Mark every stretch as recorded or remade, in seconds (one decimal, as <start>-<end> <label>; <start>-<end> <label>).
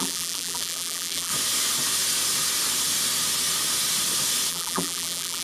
0.0-1.3 remade; 1.3-4.5 recorded; 4.5-5.4 remade